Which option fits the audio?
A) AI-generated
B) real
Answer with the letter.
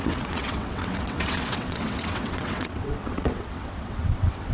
A